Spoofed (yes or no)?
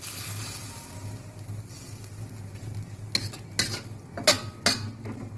no